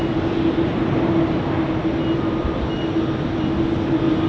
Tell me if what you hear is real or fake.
real